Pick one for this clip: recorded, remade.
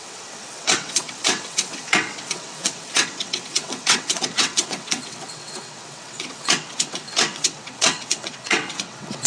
remade